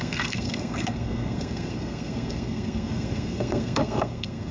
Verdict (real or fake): fake